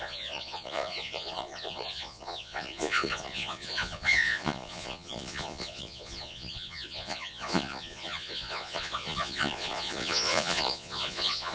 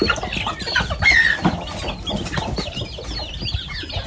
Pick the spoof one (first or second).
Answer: first